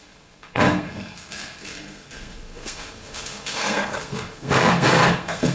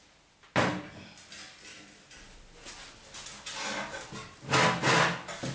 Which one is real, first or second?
second